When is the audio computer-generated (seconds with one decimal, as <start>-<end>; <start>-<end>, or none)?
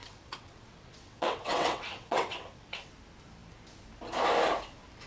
0.0-2.9